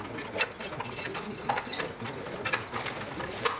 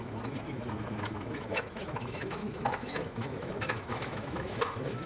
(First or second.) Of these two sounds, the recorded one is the first